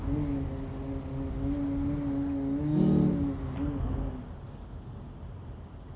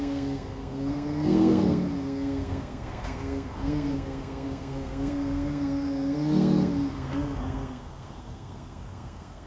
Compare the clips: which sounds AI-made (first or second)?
second